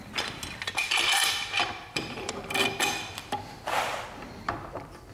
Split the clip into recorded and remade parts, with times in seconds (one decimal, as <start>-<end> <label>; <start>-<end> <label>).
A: 0.0-0.8 recorded; 0.8-3.9 remade; 3.9-5.1 recorded